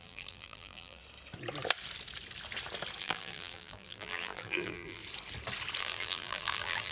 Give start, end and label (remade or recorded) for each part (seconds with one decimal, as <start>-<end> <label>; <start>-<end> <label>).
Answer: 0.0-1.0 remade; 1.0-3.0 recorded; 3.0-5.0 remade; 5.0-5.8 recorded; 5.8-6.9 remade